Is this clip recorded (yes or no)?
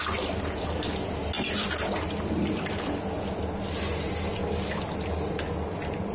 yes